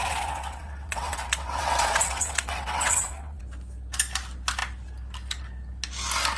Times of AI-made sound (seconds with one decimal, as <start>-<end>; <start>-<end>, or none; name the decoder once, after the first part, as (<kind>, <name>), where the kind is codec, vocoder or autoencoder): 0.0-3.4 (vocoder, WaveNeXt)